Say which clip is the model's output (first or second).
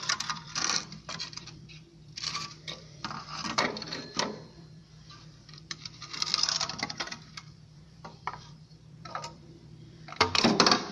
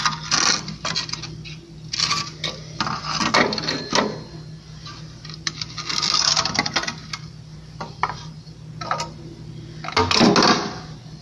first